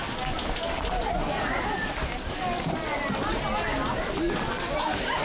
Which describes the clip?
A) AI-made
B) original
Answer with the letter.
B